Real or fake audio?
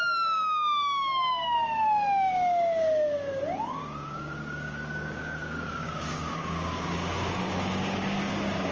fake